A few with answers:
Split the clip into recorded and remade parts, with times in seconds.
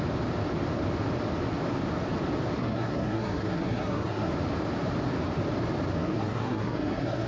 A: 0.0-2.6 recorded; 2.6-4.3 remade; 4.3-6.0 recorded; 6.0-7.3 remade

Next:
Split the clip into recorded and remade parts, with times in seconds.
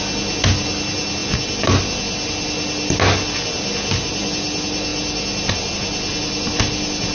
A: 0.0-7.1 recorded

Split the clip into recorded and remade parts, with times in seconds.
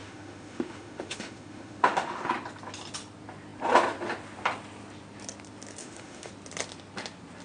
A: 0.0-2.3 remade; 2.3-5.8 recorded; 5.8-6.3 remade; 6.3-7.4 recorded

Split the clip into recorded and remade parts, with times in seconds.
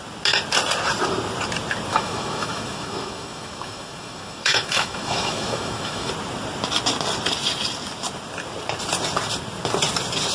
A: 0.0-1.9 recorded; 1.9-6.1 remade; 6.1-10.3 recorded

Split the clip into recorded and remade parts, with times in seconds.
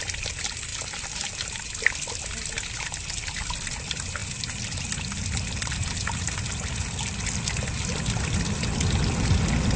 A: 0.0-9.8 recorded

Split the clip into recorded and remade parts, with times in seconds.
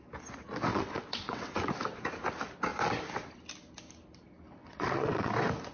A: 0.0-0.7 recorded; 0.7-1.7 remade; 1.7-4.6 recorded; 4.6-5.3 remade; 5.3-5.7 recorded